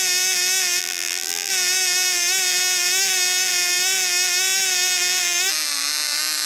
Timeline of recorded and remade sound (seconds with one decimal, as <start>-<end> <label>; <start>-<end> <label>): 0.0-0.8 recorded; 0.8-1.5 remade; 1.5-6.5 recorded